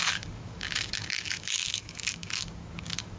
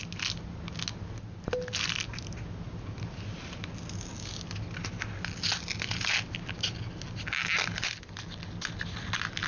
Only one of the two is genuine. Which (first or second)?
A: second